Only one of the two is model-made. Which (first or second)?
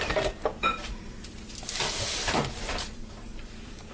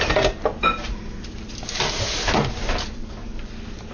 first